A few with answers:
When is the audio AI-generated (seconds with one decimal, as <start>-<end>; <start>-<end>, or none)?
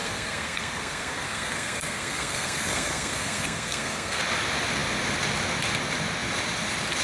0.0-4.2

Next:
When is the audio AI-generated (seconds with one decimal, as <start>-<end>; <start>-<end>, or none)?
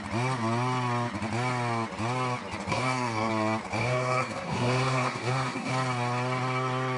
2.7-3.3; 3.8-5.7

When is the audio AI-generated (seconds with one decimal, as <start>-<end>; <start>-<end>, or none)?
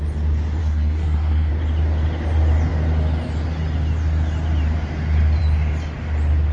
0.6-1.5